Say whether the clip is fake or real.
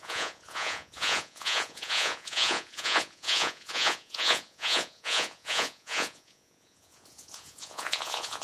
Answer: fake